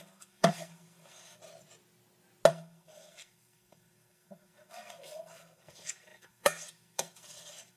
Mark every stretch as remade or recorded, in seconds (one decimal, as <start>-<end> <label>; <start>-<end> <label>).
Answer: 0.0-1.4 remade; 1.4-2.5 recorded; 2.5-7.8 remade